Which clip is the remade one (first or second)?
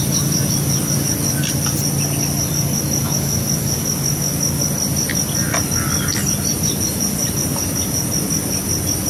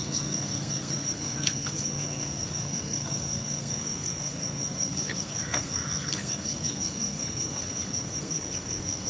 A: second